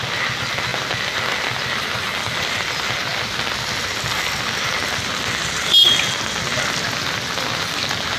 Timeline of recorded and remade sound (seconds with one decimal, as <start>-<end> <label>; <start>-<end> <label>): 0.0-8.2 recorded